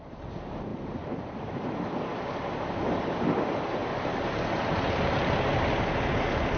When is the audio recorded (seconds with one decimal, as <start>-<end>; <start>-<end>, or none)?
0.0-0.7; 1.4-3.8; 5.8-6.6